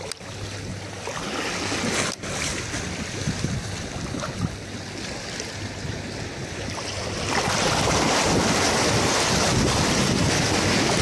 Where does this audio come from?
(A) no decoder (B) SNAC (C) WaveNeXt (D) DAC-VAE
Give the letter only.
A